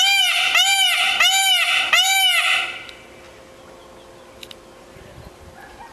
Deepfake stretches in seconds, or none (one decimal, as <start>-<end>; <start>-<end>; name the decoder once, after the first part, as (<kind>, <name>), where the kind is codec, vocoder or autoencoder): 0.0-1.4 (vocoder, BigVGAN v2); 4.9-5.9